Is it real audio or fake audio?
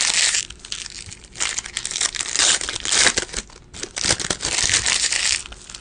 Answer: real